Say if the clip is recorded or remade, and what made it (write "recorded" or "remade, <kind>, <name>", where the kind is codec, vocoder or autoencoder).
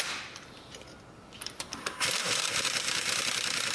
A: remade, vocoder, BigVGAN v2